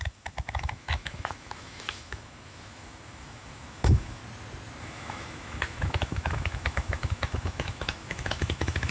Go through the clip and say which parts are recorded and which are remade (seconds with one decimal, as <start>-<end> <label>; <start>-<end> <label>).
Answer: 0.0-4.2 remade; 4.2-4.8 recorded; 4.8-8.9 remade